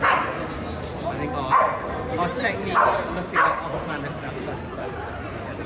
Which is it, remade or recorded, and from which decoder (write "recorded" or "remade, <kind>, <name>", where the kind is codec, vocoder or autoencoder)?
recorded